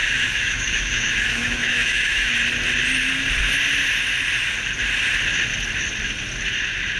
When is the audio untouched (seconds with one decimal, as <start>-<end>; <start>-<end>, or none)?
2.3-7.0